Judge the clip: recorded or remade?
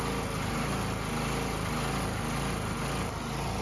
recorded